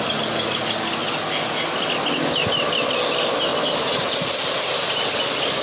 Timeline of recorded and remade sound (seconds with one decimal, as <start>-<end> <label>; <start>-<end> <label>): 0.0-5.6 recorded